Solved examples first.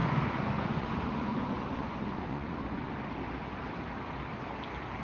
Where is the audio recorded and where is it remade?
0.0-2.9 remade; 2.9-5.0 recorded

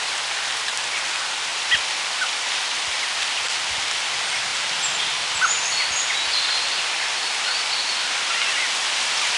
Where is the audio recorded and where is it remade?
0.0-9.4 recorded

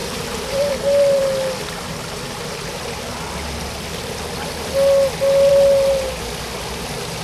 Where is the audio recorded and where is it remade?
0.0-0.7 remade; 0.7-7.2 recorded

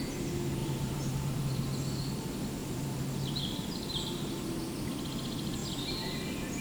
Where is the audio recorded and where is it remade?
0.0-0.6 recorded; 0.6-1.6 remade; 1.6-2.6 recorded; 2.6-3.7 remade; 3.7-6.6 recorded

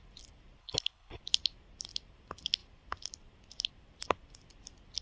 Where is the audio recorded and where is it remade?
0.0-0.6 recorded; 0.6-1.2 remade; 1.2-5.0 recorded

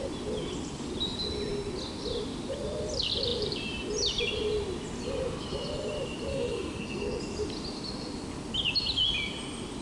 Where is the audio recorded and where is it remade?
0.0-6.3 recorded; 6.3-7.2 remade; 7.2-9.8 recorded